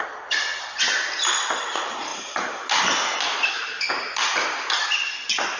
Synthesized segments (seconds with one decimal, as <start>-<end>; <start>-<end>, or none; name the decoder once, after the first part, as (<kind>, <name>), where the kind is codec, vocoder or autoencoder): none

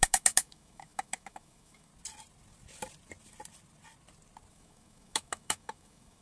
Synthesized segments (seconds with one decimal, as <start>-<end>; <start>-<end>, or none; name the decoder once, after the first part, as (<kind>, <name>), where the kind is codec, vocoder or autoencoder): 0.0-1.9 (autoencoder, DAC-VAE); 4.5-6.2

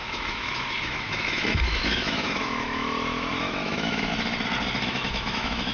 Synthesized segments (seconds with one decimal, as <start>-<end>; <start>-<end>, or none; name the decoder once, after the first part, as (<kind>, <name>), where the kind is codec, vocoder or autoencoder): 0.0-4.1 (autoencoder, DAC-VAE); 4.8-5.7

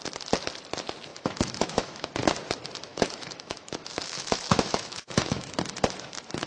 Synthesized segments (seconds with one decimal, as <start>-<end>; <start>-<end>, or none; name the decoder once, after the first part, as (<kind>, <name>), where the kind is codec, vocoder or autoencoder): 1.1-2.1 (autoencoder, DAC-VAE); 2.9-5.6

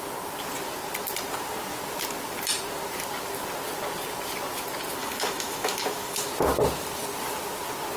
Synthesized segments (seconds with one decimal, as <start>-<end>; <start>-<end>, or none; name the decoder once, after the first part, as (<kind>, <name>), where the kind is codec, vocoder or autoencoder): 5.0-6.3 (autoencoder, DAC-VAE)

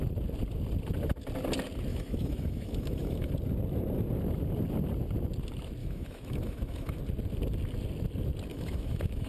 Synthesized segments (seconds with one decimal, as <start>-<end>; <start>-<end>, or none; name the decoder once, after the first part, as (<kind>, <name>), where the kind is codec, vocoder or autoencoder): 1.9-3.3 (autoencoder, DAC-VAE); 5.8-7.0; 8.5-9.3

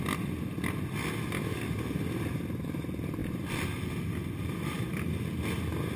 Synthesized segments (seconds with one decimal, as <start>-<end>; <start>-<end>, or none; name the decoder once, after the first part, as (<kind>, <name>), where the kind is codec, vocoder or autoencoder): none